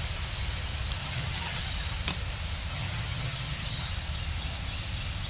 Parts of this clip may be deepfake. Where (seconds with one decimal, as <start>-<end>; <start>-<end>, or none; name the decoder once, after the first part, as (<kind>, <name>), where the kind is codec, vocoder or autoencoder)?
1.0-1.6 (vocoder, HiFi-GAN); 2.7-3.9